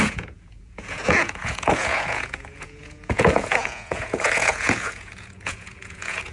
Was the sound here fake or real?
fake